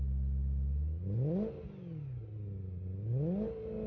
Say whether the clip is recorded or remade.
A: recorded